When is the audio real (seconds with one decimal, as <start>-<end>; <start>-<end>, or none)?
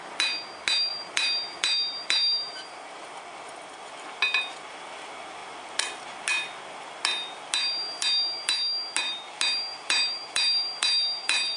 0.0-0.9; 3.2-9.7